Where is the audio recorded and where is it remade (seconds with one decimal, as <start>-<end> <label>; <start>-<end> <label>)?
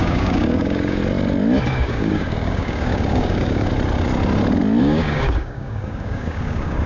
0.0-1.0 remade; 1.0-1.7 recorded; 1.7-3.7 remade; 3.7-4.8 recorded; 4.8-6.9 remade